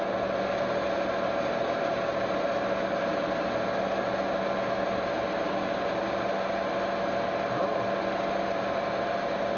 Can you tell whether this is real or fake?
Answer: real